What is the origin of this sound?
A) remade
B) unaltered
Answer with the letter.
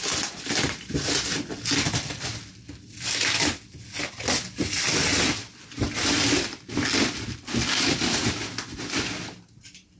B